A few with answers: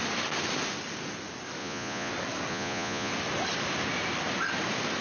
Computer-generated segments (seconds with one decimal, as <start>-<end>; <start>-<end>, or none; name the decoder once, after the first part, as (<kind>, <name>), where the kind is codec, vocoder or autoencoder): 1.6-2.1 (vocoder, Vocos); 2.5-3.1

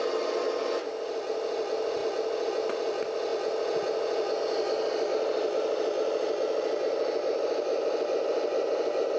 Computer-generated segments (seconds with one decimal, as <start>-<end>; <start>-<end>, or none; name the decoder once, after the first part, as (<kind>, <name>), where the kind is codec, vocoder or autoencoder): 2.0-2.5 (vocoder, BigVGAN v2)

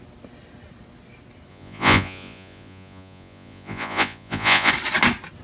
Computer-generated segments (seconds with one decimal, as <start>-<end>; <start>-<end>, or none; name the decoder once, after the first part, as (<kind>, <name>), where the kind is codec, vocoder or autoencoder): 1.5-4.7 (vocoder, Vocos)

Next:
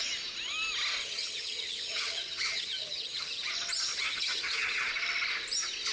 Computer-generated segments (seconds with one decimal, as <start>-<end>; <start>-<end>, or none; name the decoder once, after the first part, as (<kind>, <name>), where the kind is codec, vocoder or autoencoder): 1.0-3.5 (vocoder, HiFi-GAN); 3.9-4.9

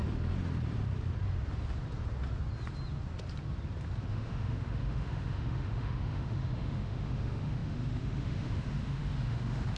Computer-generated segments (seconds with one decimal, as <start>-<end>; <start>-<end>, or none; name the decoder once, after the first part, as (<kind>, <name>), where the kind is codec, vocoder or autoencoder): 4.1-9.8 (autoencoder, DAC-VAE)

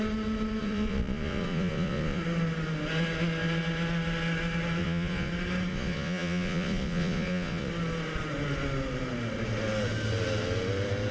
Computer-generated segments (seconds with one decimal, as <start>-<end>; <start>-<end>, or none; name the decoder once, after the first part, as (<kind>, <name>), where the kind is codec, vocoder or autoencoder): 0.6-2.2 (vocoder, Vocos); 4.8-5.3; 5.7-7.7

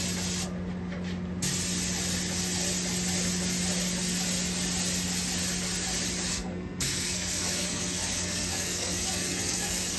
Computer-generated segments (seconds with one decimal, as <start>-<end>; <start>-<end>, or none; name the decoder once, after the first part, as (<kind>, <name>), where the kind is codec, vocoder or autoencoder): 6.3-10.0 (codec, SNAC)